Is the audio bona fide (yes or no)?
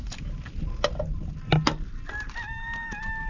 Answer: yes